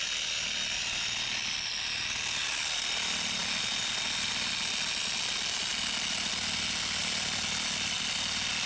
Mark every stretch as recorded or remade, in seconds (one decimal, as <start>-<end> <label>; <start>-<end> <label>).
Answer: 0.0-8.7 recorded